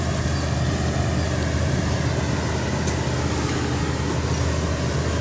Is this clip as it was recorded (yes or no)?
yes